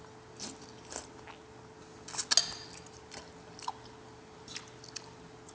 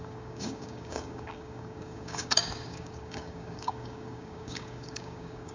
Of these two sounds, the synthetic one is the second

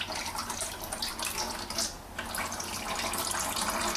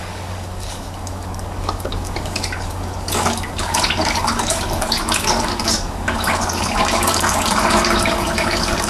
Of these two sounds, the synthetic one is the second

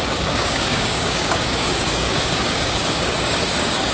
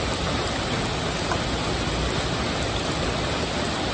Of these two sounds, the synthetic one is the first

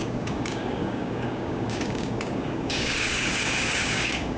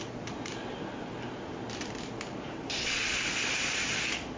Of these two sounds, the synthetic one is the first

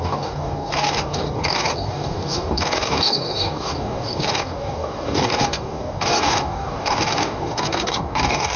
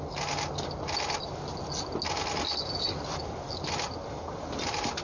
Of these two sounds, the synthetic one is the first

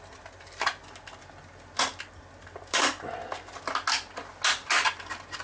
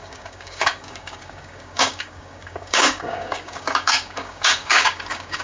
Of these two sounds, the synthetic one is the second